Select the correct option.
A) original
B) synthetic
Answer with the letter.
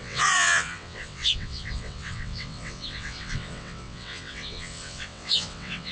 B